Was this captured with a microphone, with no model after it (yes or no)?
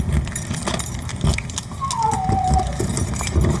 yes